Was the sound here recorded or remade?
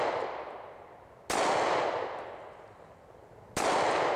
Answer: recorded